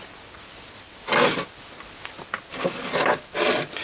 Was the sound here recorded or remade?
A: recorded